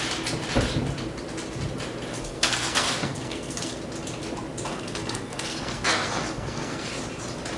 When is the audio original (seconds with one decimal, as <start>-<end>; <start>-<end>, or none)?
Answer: 0.0-2.1; 3.8-4.7; 6.9-7.6